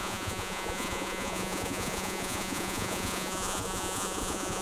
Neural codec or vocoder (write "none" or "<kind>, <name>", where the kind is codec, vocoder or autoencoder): vocoder, Vocos